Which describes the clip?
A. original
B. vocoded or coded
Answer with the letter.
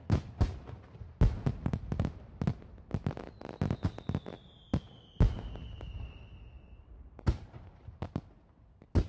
A